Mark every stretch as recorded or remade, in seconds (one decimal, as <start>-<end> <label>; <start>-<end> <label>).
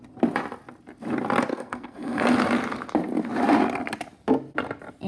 0.0-1.5 recorded; 1.5-2.2 remade; 2.2-5.1 recorded